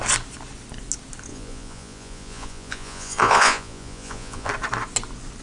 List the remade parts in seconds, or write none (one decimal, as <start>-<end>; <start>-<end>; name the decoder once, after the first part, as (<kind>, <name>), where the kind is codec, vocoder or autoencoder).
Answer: 1.3-4.5 (vocoder, Vocos)